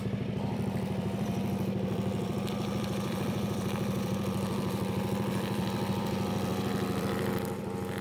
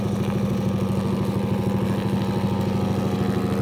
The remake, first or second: first